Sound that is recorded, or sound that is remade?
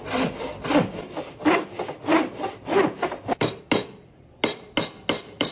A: recorded